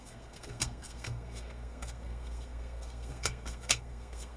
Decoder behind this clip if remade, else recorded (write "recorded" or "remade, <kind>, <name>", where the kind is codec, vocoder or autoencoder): remade, codec, SNAC